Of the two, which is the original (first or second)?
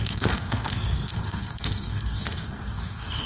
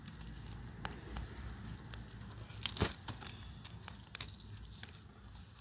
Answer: second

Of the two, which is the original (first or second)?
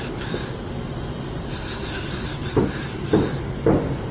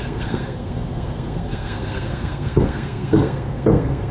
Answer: first